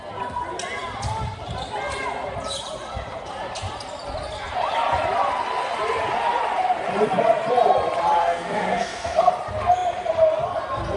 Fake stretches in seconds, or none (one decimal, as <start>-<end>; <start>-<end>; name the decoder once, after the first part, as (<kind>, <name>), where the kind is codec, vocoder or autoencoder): 8.2-9.3 (codec, SNAC)